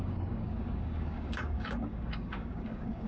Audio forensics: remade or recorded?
remade